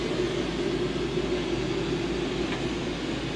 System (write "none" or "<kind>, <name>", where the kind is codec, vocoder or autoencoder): none